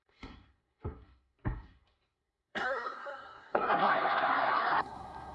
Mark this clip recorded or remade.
remade